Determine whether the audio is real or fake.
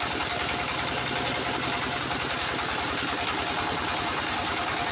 real